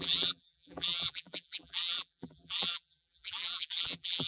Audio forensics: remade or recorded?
remade